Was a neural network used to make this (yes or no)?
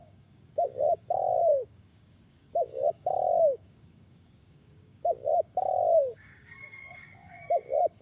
yes